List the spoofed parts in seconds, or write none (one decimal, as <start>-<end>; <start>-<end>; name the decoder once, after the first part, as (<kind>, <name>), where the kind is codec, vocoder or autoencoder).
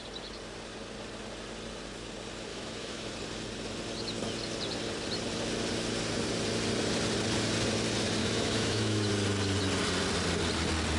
2.5-3.1 (autoencoder, DAC-VAE); 8.2-9.1